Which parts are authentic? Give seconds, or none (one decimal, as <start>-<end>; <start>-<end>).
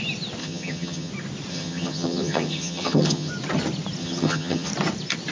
0.0-0.4; 1.1-1.5; 3.3-4.0; 4.7-5.3